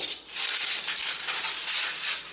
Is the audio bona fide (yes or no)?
yes